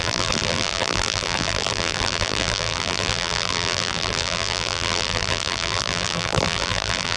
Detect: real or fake fake